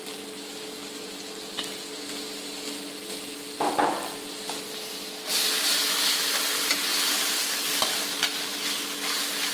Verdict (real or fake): real